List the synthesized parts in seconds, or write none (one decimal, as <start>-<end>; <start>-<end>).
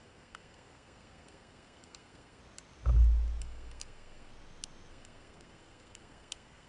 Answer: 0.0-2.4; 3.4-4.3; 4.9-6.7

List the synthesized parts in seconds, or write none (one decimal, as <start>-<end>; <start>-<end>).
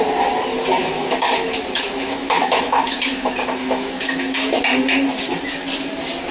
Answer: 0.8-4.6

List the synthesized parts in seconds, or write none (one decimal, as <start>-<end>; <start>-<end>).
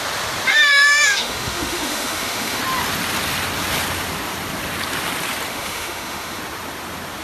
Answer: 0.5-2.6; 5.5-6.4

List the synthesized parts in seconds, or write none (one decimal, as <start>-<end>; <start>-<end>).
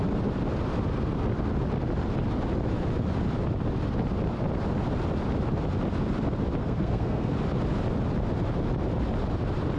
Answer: 6.6-7.3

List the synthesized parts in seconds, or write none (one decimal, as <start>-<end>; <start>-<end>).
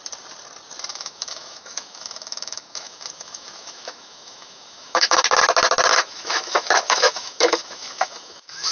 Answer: 0.9-5.2; 5.9-8.7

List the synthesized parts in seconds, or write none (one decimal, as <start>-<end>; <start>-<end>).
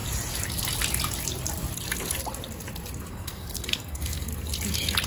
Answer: 3.1-4.3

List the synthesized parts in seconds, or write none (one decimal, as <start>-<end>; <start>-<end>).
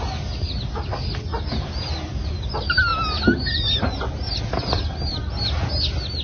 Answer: none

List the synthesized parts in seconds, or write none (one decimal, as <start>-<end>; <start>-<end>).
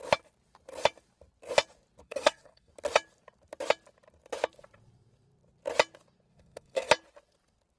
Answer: 2.0-2.7; 6.3-6.9